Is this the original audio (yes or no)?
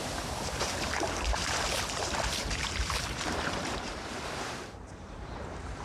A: no